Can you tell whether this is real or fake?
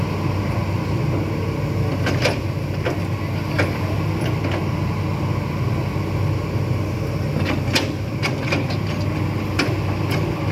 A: real